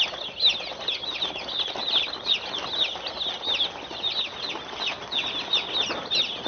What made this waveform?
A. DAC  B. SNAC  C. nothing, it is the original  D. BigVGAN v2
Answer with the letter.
C